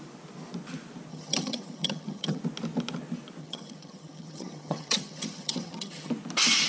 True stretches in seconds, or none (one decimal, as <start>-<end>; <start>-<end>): 0.0-1.1; 2.4-3.4; 6.1-6.7